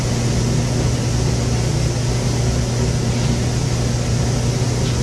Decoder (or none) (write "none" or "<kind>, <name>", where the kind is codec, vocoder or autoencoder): none